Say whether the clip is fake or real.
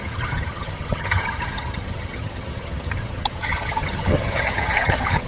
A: fake